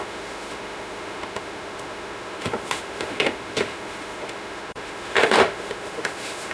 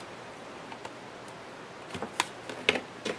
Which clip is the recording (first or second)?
second